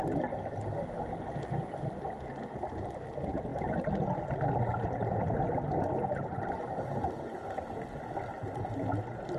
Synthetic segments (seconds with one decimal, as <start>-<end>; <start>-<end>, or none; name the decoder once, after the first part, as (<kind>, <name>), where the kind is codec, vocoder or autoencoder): none